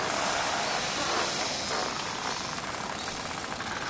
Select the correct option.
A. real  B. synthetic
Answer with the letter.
A